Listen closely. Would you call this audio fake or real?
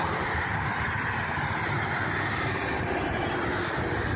real